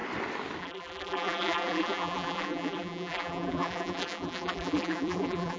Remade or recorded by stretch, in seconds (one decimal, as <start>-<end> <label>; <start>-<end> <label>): 0.0-0.6 recorded; 0.6-5.6 remade

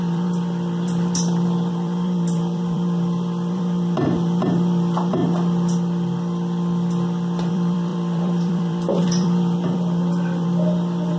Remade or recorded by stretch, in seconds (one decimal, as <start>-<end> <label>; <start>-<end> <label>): 0.0-5.2 remade; 5.2-7.5 recorded; 7.5-11.2 remade

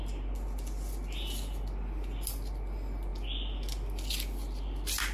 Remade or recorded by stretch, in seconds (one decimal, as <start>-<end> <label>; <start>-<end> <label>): 0.0-5.1 recorded

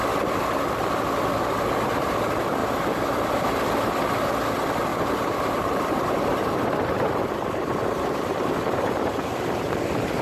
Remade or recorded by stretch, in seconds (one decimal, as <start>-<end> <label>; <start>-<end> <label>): 0.0-4.9 recorded; 4.9-9.3 remade; 9.3-10.2 recorded

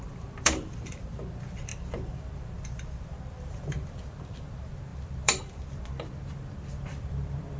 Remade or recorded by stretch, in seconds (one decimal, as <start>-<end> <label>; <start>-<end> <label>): 0.0-7.6 remade

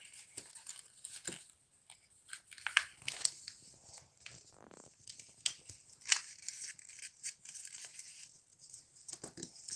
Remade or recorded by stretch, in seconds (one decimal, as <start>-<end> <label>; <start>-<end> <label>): 0.0-3.7 recorded; 3.7-5.1 remade; 5.1-6.9 recorded; 6.9-7.8 remade; 7.8-9.8 recorded

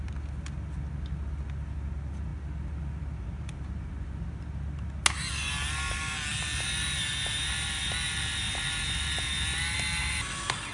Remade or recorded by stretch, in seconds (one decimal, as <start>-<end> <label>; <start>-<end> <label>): 0.0-10.7 recorded